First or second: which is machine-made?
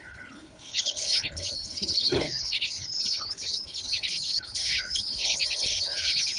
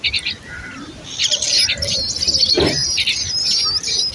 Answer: first